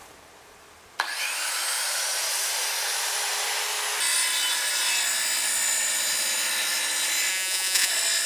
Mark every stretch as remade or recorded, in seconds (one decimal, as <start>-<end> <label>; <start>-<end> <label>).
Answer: 0.0-7.3 recorded; 7.3-7.9 remade; 7.9-8.3 recorded